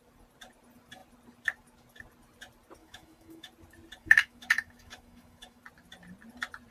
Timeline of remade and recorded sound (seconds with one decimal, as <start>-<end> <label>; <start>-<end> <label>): 0.0-2.8 recorded; 2.8-3.5 remade; 3.5-4.0 recorded; 4.0-5.6 remade; 5.6-6.7 recorded